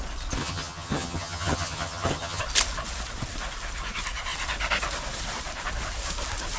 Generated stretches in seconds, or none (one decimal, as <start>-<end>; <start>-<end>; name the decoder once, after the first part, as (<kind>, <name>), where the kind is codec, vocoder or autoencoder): 0.4-2.4 (vocoder, HiFi-GAN)